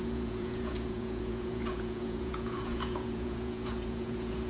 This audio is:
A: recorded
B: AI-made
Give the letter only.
B